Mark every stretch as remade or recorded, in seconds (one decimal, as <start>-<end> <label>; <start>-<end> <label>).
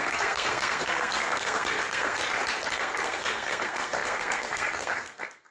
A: 0.0-2.2 remade; 2.2-2.7 recorded; 2.7-5.5 remade